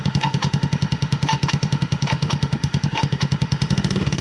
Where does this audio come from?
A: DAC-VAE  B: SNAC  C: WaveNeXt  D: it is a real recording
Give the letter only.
A